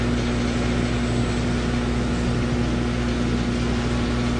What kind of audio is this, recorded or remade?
recorded